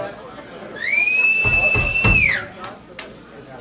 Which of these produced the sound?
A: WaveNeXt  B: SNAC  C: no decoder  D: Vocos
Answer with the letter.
C